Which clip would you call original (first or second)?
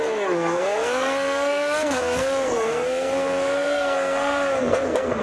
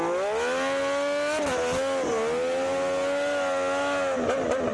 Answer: second